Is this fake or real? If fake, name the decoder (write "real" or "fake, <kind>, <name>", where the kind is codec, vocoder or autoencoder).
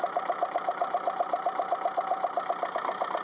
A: real